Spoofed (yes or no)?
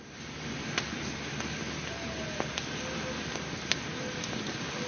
no